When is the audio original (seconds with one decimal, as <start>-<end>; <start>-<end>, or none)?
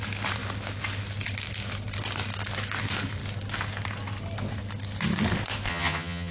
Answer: 0.0-5.7